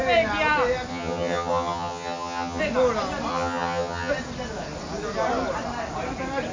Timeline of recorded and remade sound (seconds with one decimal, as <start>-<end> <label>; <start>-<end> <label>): 0.0-0.9 recorded; 0.9-2.6 remade; 2.6-3.3 recorded; 3.3-4.1 remade; 4.1-6.5 recorded